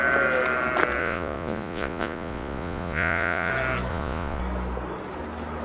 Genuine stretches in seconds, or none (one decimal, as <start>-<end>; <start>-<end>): 0.0-1.0; 3.5-3.9; 4.4-5.6